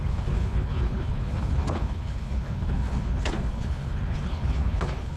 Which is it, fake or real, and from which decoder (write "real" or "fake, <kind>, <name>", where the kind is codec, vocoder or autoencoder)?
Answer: fake, codec, HILCodec